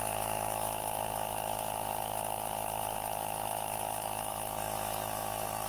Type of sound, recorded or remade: remade